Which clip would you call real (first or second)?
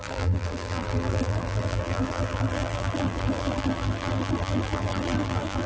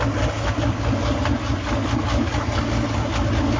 second